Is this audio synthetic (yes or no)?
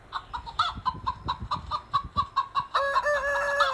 no